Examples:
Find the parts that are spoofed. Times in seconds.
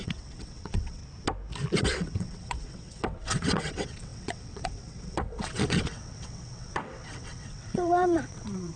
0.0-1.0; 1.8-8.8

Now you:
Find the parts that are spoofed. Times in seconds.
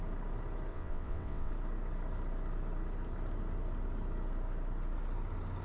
0.7-1.5